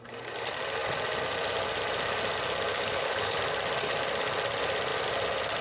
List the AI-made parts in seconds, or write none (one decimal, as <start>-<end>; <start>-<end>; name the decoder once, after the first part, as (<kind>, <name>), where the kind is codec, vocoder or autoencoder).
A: 2.7-3.4 (codec, HILCodec)